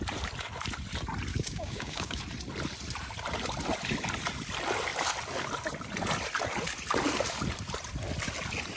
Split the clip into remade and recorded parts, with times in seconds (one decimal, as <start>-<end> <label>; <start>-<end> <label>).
0.0-1.3 recorded; 1.3-2.2 remade; 2.2-8.8 recorded